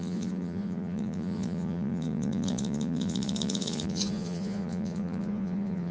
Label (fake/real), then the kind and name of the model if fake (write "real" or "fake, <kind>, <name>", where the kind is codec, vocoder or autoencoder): fake, vocoder, Vocos